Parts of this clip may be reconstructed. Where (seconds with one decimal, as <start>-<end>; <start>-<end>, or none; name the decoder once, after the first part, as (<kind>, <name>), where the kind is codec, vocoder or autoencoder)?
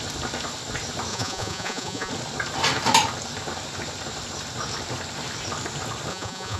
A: 1.1-2.1 (vocoder, Vocos); 6.1-6.6